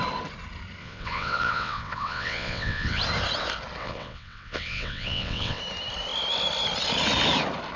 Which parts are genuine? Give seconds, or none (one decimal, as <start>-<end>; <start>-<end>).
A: 0.0-0.8; 3.0-3.8; 5.6-7.8